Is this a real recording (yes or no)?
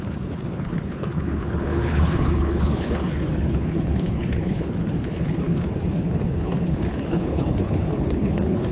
no